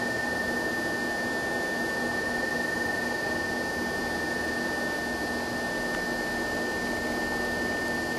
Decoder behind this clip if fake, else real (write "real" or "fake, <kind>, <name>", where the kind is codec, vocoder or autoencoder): real